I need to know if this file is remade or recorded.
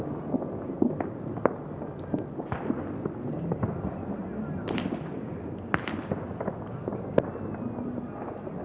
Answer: recorded